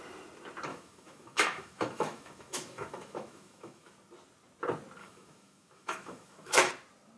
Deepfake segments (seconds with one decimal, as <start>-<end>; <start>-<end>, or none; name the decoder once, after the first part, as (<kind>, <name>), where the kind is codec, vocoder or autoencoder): 0.7-3.9 (autoencoder, DAC-VAE); 5.0-6.7